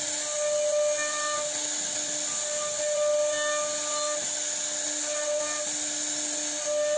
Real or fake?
real